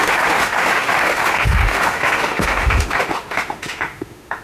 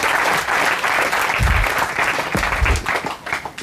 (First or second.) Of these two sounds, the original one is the second